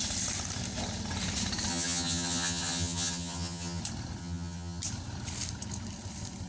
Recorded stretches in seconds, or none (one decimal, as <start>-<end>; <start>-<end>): 0.0-1.7; 3.8-4.2; 4.8-6.5